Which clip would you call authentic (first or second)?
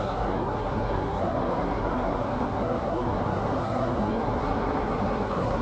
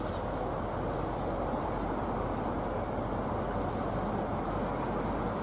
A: second